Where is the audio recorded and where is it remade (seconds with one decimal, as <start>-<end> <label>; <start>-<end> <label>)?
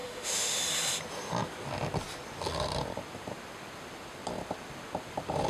0.0-0.6 remade; 0.6-5.5 recorded